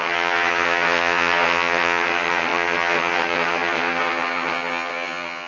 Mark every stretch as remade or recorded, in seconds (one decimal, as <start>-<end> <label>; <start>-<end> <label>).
0.0-5.5 remade